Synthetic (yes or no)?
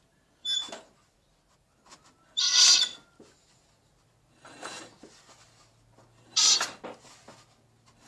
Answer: no